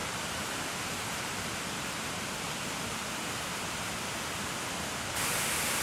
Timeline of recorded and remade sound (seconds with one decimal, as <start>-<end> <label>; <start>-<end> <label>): 0.0-3.5 remade; 3.5-5.8 recorded